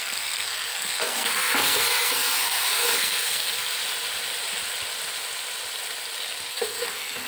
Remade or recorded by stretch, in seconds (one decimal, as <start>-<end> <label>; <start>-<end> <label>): 0.0-3.8 remade; 3.8-6.5 recorded; 6.5-7.3 remade